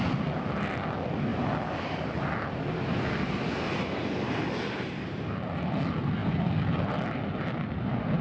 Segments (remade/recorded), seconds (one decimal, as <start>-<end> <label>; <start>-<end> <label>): 0.0-8.2 recorded